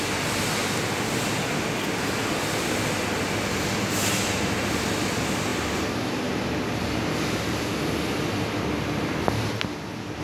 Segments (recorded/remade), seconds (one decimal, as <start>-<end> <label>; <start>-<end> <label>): 0.0-10.2 recorded